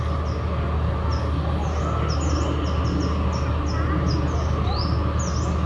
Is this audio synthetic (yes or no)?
no